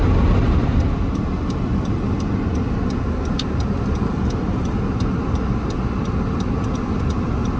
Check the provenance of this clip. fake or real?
real